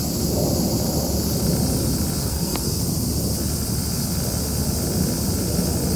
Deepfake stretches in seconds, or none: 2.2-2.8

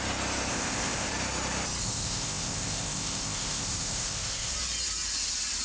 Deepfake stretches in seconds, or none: 0.5-1.1; 1.8-4.5

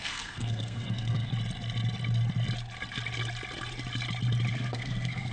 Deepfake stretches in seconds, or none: 0.0-1.3; 4.5-5.3

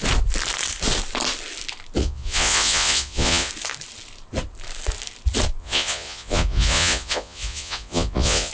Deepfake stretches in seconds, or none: 2.0-3.5; 5.6-8.5